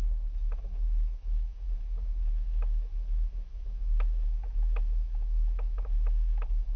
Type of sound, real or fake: fake